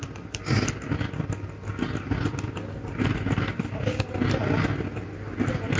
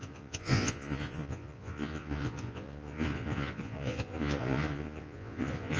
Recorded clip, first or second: first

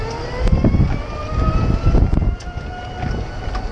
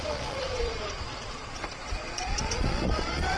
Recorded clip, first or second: first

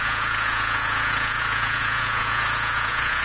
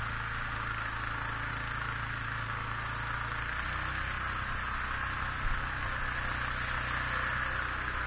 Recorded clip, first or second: second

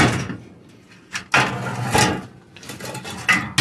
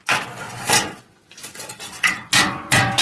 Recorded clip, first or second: first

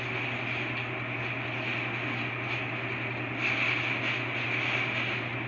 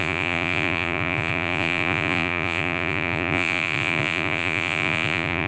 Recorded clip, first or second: first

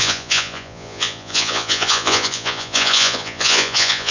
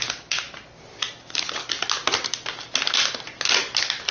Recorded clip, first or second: second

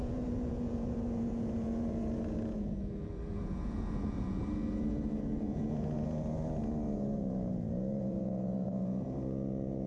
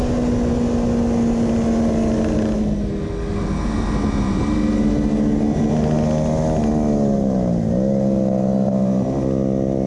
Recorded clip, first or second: second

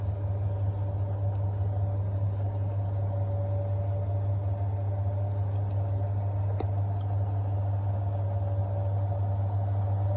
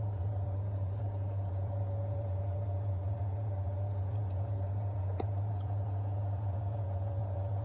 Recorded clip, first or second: first